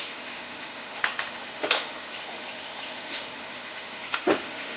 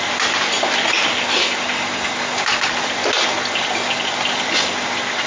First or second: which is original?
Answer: second